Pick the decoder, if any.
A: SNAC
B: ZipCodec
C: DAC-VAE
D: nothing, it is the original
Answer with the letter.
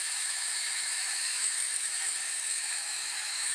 C